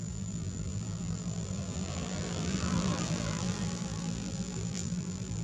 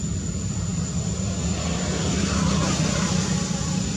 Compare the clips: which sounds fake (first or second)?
first